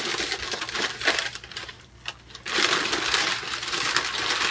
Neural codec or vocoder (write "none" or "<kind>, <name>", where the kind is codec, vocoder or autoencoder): none